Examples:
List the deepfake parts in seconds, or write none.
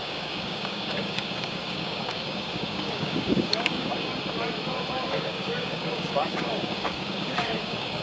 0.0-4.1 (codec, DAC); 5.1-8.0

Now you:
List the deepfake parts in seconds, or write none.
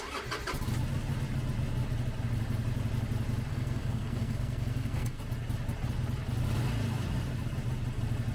3.5-5.2 (codec, SNAC)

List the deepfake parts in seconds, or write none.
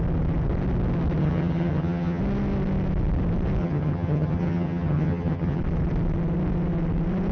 1.2-2.2 (vocoder, HiFi-GAN); 3.6-5.6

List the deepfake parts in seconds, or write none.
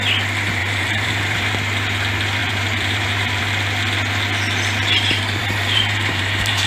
0.6-1.5 (vocoder, BigVGAN v2); 2.4-3.4; 5.4-6.7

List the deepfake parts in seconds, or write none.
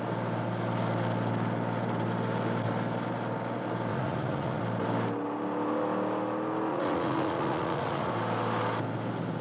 3.9-4.6 (vocoder, Vocos); 6.7-8.1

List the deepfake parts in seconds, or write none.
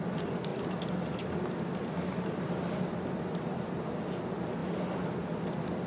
none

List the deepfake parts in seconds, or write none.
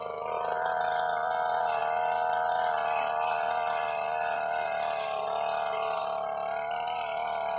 0.0-1.8 (vocoder, BigVGAN v2); 2.5-7.6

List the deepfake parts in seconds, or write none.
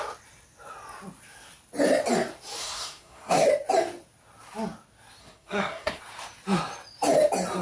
2.6-3.5 (codec, SNAC); 5.2-6.0